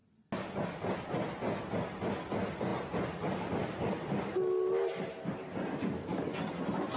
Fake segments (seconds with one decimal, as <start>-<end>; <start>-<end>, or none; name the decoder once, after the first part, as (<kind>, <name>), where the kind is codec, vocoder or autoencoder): none